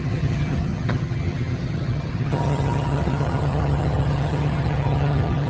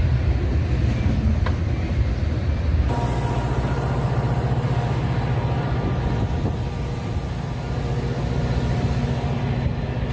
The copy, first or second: first